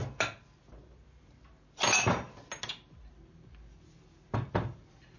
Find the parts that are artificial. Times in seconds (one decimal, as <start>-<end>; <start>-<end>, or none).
none